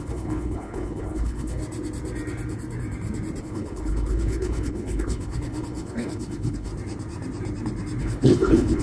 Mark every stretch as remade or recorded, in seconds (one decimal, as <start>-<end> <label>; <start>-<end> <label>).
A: 0.0-1.6 remade; 1.6-3.4 recorded; 3.4-6.7 remade; 6.7-8.0 recorded; 8.0-8.8 remade